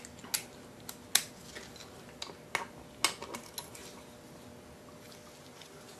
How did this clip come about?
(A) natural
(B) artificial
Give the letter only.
A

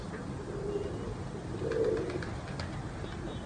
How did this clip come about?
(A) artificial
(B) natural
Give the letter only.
B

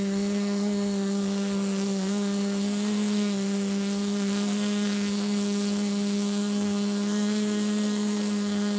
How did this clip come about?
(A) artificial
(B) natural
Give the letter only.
A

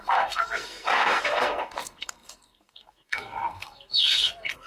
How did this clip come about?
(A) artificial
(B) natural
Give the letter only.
A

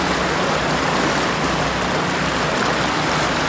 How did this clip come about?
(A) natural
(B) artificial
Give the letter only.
A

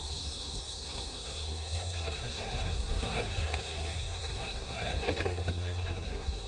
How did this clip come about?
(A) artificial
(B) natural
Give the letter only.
A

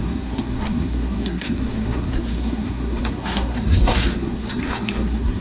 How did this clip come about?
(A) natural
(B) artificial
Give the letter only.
B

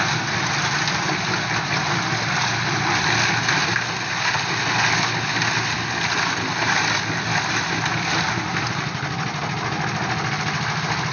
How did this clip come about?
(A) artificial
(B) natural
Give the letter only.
B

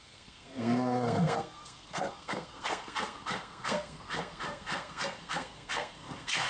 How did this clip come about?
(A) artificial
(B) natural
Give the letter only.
A